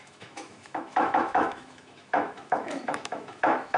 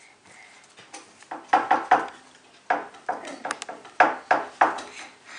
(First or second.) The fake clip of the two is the first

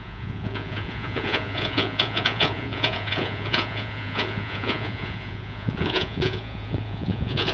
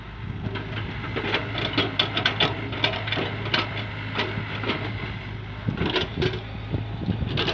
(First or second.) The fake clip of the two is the first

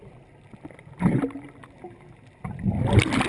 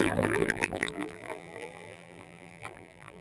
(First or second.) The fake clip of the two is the second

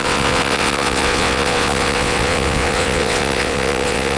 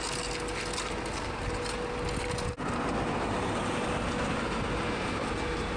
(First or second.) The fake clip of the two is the first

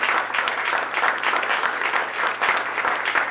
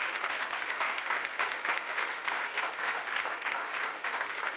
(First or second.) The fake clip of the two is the second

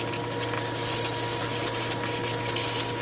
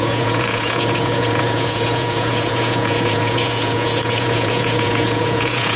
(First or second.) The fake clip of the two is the second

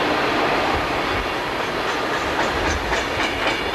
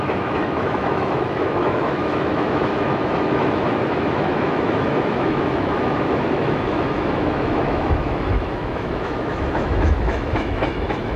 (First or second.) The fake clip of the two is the second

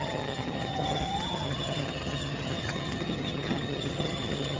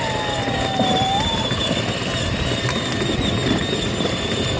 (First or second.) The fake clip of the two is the first